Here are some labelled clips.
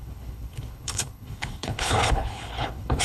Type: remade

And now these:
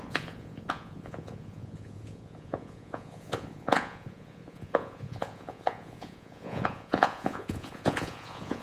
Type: remade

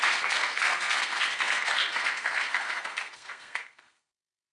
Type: remade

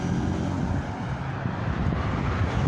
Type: recorded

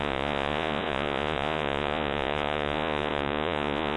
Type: remade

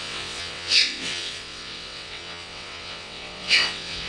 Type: remade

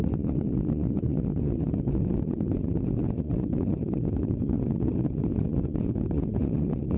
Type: remade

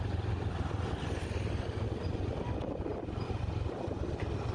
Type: recorded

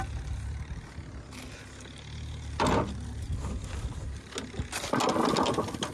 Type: recorded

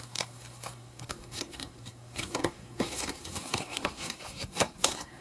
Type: remade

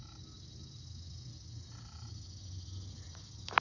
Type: recorded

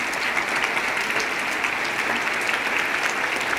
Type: recorded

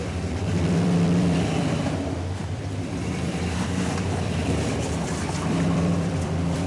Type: remade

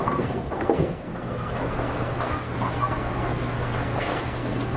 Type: remade